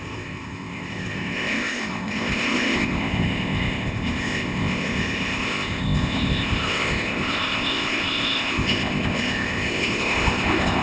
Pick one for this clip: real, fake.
fake